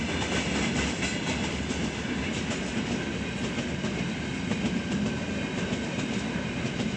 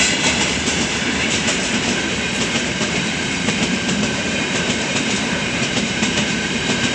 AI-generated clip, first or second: second